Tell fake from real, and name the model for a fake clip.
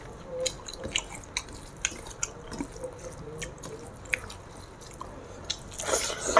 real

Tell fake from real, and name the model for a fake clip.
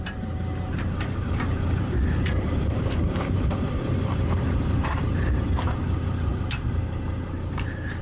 fake, vocoder, BigVGAN v2